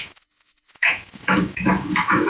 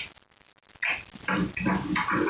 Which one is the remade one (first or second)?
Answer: first